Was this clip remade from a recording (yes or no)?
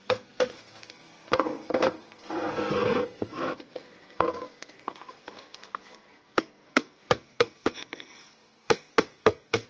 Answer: yes